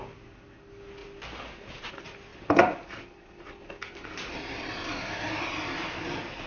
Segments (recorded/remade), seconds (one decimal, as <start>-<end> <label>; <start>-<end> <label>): 0.0-1.0 recorded; 1.0-1.9 remade; 1.9-2.3 recorded; 2.3-6.5 remade

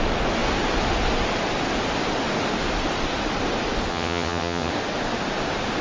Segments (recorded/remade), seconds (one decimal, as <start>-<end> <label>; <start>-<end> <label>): 0.0-3.9 recorded; 3.9-4.7 remade; 4.7-5.8 recorded

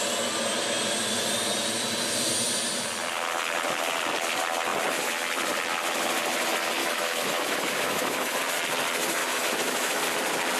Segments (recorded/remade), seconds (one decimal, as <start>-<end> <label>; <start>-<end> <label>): 0.0-6.8 recorded; 6.8-8.4 remade; 8.4-9.2 recorded; 9.2-10.0 remade; 10.0-10.6 recorded

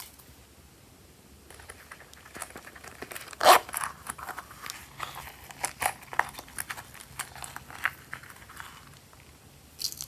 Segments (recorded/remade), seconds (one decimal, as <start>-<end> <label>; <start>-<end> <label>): 0.0-2.4 recorded; 2.4-4.6 remade; 4.6-10.1 recorded

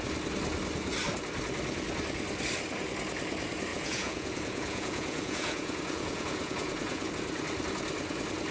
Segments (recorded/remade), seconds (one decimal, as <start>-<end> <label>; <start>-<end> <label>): 0.0-3.7 recorded; 3.7-7.1 remade; 7.1-8.5 recorded

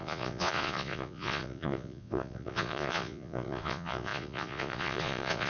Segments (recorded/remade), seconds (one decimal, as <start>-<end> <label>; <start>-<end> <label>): 0.0-5.5 remade

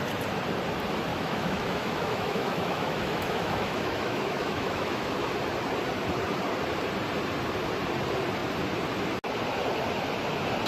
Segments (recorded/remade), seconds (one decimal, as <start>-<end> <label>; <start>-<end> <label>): 0.0-1.1 recorded; 1.1-5.3 remade; 5.3-10.7 recorded

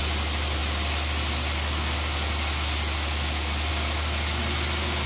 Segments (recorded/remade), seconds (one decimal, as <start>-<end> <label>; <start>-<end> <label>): 0.0-5.1 recorded